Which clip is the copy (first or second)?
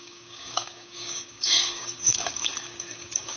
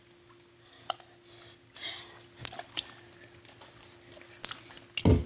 first